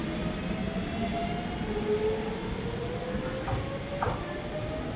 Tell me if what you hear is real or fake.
real